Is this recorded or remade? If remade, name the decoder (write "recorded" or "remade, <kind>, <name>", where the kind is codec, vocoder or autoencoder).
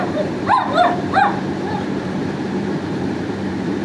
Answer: remade, vocoder, BigVGAN v2